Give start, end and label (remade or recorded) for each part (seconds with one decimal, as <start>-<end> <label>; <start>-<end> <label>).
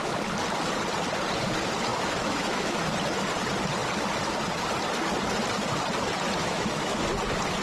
0.0-1.9 recorded; 1.9-2.8 remade; 2.8-6.4 recorded; 6.4-7.0 remade; 7.0-7.6 recorded